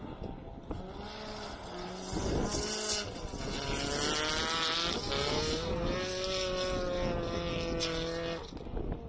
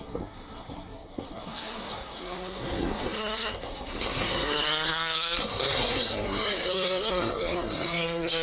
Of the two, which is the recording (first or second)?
first